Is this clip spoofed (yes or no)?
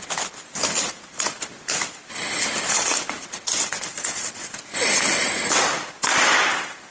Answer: no